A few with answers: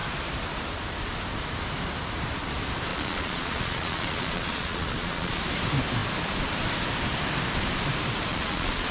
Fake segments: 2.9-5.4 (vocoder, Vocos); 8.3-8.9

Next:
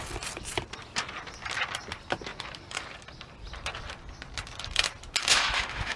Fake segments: 5.2-6.0 (autoencoder, DAC-VAE)

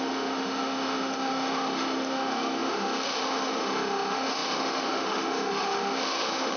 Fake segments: 0.0-6.6 (autoencoder, DAC-VAE)

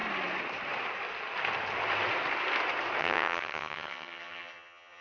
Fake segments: 3.0-5.0 (vocoder, HiFi-GAN)